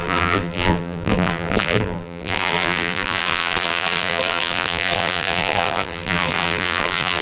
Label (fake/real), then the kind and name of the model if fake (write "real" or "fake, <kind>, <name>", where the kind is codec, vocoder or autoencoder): fake, vocoder, BigVGAN v2